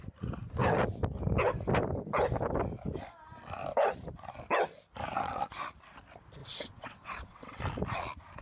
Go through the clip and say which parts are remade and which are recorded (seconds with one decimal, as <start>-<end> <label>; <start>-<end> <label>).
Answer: 0.0-6.4 recorded; 6.4-7.6 remade; 7.6-8.4 recorded